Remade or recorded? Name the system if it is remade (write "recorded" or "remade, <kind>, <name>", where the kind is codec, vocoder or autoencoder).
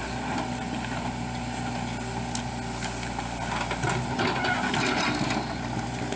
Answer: recorded